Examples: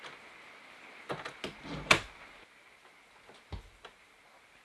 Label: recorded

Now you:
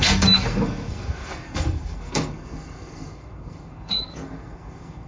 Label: remade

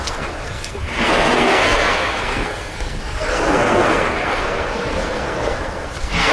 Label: remade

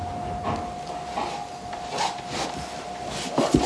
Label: recorded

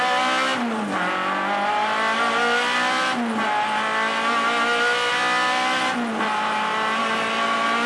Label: recorded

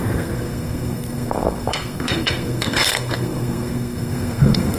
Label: remade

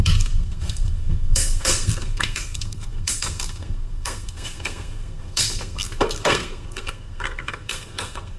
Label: remade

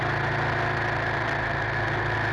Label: recorded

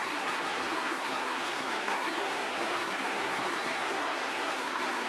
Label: remade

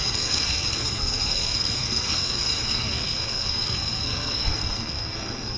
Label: remade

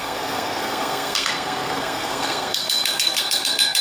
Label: remade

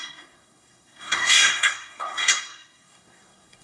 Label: remade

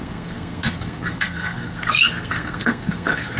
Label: remade